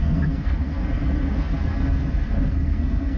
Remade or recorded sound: remade